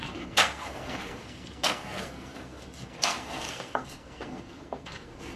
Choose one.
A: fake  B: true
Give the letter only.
A